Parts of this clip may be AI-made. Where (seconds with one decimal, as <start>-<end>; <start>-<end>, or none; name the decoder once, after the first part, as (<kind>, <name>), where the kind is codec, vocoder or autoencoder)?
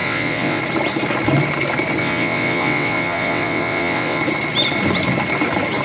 0.0-0.6 (vocoder, WaveNeXt); 2.0-4.2